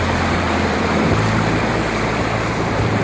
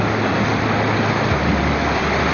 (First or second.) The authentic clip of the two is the second